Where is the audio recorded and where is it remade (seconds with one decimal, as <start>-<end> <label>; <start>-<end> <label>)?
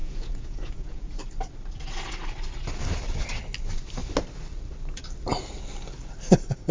0.0-1.2 remade; 1.2-6.7 recorded